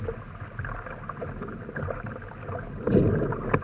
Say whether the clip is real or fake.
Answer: real